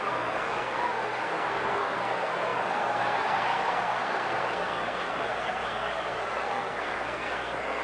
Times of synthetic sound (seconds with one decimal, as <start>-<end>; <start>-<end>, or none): 0.0-7.8